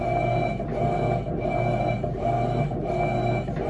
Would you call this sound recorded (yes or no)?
yes